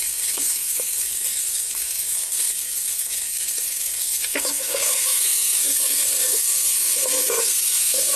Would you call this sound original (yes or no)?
no